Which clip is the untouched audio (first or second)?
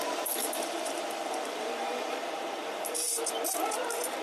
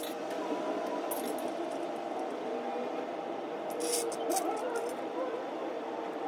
second